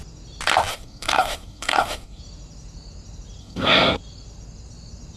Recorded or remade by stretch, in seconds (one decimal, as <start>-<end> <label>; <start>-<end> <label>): 0.0-0.7 recorded; 0.7-2.2 remade; 2.2-3.4 recorded; 3.4-4.0 remade; 4.0-5.2 recorded